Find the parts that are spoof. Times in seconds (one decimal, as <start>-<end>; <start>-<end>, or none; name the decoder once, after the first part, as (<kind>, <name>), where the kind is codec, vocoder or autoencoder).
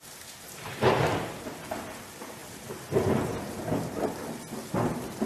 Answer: none